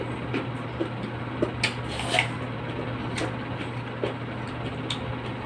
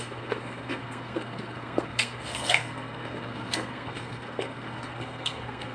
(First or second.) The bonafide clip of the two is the first